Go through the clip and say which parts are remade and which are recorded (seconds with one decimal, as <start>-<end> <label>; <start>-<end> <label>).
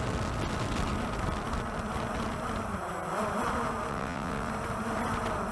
0.0-3.9 recorded; 3.9-4.5 remade; 4.5-5.5 recorded